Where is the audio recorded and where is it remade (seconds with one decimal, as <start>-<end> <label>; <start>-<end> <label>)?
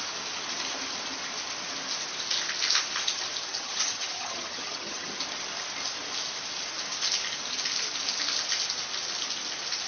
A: 0.0-3.5 recorded; 3.5-5.2 remade; 5.2-9.9 recorded